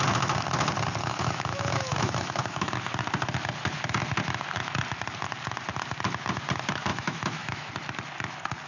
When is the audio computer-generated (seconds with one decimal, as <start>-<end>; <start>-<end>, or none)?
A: 1.0-2.7; 6.9-7.7